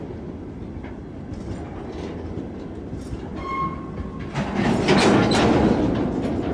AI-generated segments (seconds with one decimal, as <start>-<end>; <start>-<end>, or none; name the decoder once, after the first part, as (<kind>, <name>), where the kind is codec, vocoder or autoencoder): none